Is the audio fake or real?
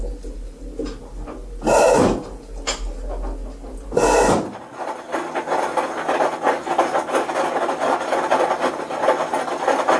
real